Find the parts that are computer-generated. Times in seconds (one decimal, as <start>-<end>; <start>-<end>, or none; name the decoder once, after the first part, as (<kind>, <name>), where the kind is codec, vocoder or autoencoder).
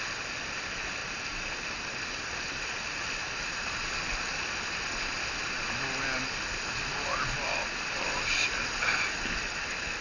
none